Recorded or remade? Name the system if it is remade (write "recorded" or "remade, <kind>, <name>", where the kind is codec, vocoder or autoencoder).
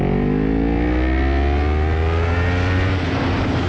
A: recorded